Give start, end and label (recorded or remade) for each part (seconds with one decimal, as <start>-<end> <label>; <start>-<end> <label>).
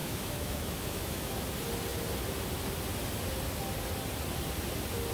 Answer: 0.0-1.4 remade; 1.4-5.1 recorded